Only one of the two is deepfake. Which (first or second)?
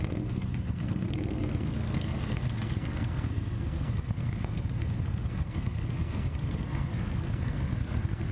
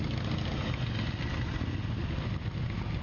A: first